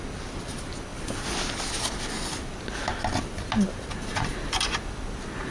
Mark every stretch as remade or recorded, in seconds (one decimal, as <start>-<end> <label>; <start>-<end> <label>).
0.0-5.5 recorded